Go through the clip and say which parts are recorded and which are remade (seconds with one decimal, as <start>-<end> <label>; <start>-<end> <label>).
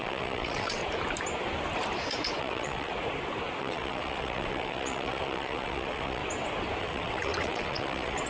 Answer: 0.0-0.8 remade; 0.8-2.4 recorded; 2.4-2.9 remade; 2.9-3.6 recorded; 3.6-6.2 remade; 6.2-6.8 recorded; 6.8-8.3 remade